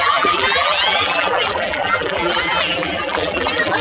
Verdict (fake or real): fake